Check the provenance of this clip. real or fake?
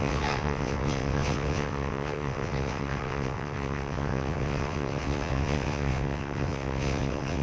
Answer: fake